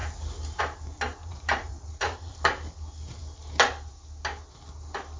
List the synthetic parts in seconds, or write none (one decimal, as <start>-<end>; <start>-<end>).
1.2-2.3